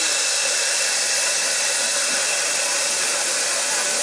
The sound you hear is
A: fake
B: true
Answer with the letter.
B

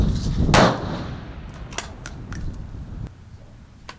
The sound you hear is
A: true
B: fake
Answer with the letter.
A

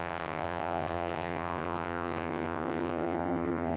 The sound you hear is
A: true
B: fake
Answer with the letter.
B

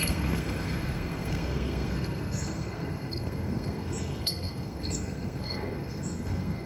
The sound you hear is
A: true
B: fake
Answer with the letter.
B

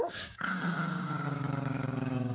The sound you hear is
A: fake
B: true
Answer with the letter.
A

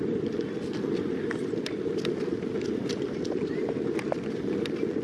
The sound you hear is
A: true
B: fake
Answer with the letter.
A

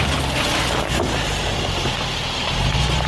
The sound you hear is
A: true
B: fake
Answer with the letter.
A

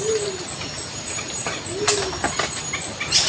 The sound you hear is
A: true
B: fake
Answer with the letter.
A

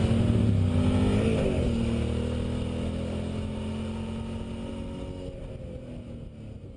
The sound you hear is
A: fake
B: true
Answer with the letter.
B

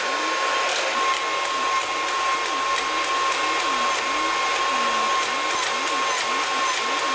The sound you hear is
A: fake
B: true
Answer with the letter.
B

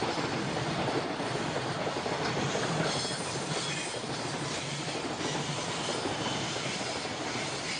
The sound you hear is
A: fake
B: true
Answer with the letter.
B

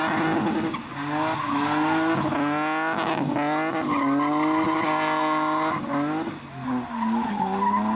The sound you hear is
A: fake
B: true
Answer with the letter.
B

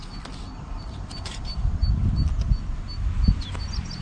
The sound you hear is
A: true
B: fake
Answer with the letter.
A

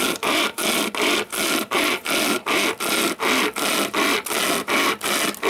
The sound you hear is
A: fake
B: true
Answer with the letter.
B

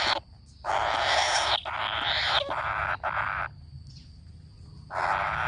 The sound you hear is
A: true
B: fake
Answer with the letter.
A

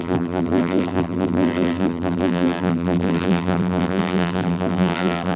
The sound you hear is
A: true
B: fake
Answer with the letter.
B